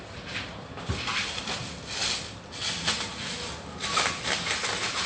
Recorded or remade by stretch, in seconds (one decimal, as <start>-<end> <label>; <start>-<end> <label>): 0.0-5.1 recorded